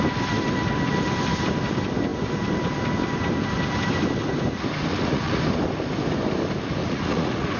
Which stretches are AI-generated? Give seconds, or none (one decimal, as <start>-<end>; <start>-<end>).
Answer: 4.9-5.4; 6.8-7.6